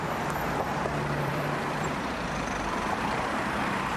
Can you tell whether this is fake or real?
fake